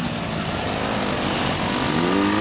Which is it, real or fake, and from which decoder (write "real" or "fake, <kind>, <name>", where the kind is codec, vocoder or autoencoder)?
real